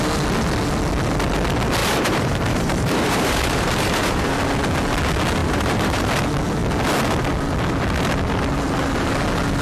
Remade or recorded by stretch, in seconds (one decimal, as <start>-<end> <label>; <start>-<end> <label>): 0.0-1.8 recorded; 1.8-4.3 remade; 4.3-5.4 recorded; 5.4-6.1 remade; 6.1-9.6 recorded